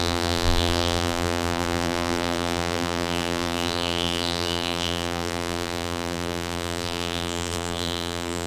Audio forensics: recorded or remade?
remade